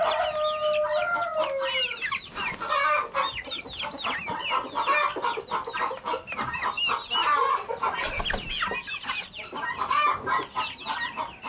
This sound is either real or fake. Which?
real